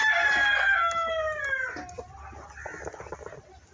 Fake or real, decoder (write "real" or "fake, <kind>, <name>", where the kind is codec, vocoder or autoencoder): real